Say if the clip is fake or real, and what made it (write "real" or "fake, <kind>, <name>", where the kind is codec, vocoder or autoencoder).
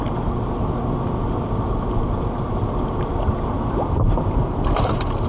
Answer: real